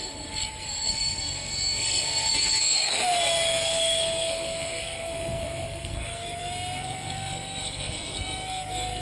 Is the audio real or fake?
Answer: fake